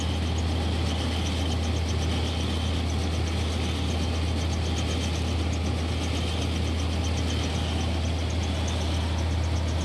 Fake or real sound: real